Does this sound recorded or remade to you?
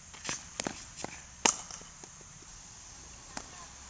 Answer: recorded